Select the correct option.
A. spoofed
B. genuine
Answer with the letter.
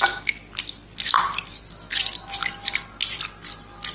B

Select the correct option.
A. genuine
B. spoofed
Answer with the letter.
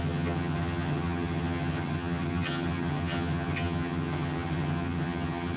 B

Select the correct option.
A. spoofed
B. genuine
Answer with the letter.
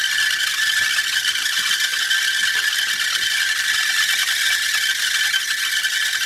B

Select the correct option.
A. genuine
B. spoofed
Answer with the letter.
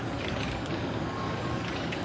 B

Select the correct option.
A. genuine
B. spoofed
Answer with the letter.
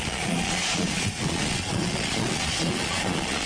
B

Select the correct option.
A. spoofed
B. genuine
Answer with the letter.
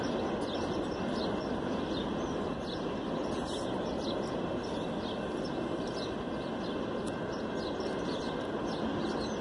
B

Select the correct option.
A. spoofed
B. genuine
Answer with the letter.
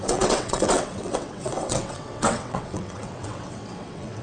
A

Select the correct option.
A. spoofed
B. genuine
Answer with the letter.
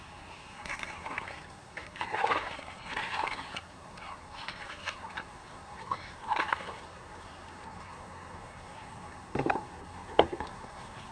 A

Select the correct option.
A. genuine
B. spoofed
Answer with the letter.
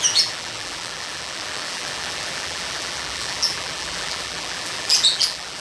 B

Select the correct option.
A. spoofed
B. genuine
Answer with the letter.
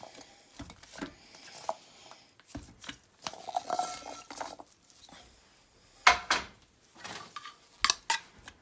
B